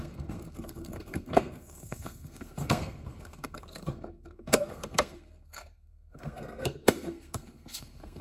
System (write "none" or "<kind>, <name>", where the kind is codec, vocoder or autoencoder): codec, SNAC